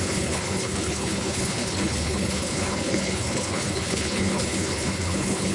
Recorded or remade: remade